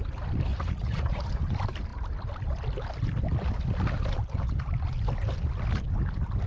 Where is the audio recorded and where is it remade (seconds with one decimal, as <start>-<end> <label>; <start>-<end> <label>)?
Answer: 0.0-0.5 recorded; 0.5-1.3 remade; 1.3-6.5 recorded